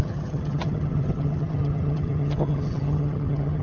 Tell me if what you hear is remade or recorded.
remade